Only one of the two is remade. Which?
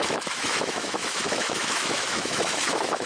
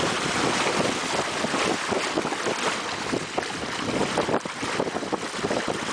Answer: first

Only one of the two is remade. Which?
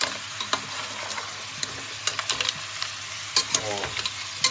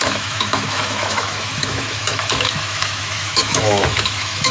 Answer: second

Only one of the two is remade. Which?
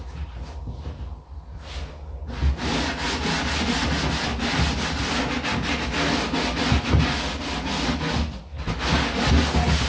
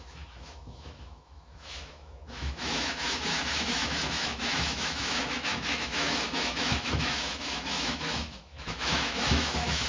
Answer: second